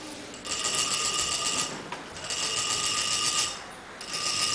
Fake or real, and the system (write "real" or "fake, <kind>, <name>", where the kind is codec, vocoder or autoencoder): real